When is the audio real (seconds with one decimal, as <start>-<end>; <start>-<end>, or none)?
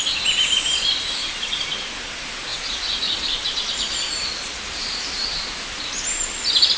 0.0-0.7; 1.7-2.5; 4.1-4.8; 6.2-6.8